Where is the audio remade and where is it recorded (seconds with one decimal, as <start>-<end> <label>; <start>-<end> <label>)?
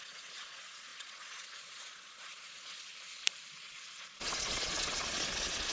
0.0-2.9 remade; 2.9-3.5 recorded; 3.5-5.7 remade